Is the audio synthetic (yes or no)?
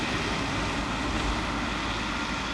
no